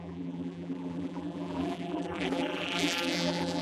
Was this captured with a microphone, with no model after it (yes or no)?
no